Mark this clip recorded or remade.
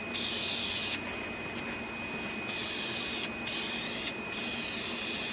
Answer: recorded